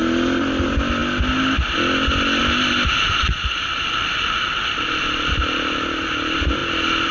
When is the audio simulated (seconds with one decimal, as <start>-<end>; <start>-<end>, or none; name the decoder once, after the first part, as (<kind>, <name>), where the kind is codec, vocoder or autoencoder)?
none